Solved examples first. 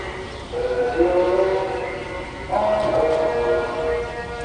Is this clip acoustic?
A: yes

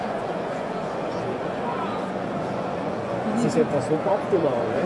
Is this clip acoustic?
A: no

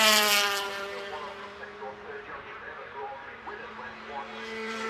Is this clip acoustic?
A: no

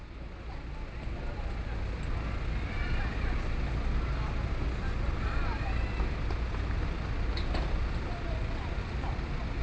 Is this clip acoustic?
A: yes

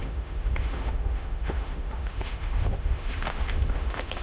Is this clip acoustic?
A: no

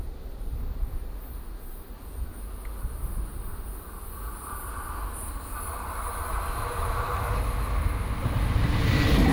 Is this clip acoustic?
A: yes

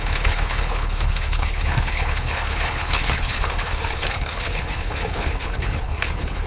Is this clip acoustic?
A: no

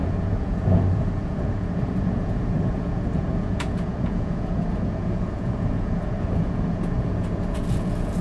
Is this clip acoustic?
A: no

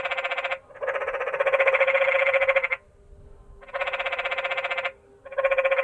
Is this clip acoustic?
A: yes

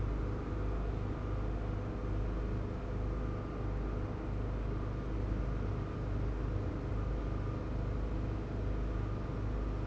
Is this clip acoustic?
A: yes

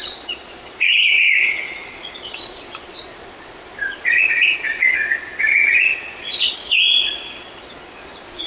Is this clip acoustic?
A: no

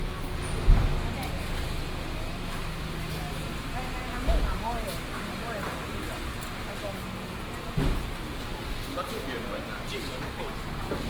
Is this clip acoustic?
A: yes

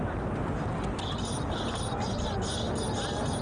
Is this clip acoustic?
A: yes